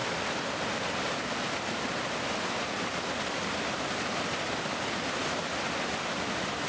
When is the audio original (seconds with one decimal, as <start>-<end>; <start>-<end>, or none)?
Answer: 0.0-6.7